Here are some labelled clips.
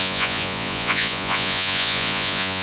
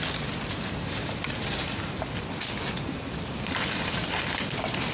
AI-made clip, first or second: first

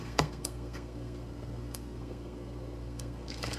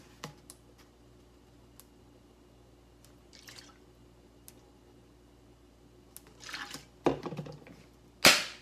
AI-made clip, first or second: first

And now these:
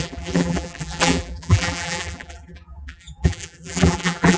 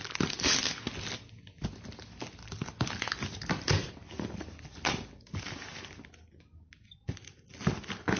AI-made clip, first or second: first